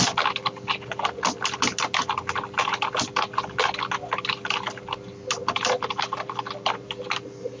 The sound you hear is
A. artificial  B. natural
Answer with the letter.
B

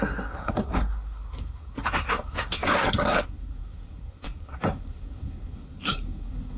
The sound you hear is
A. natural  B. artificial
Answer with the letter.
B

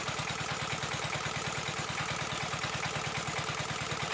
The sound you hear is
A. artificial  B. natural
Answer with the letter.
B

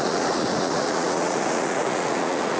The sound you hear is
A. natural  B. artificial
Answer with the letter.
B